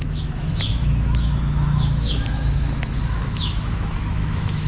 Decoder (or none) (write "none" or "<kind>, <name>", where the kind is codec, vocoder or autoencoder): autoencoder, DAC-VAE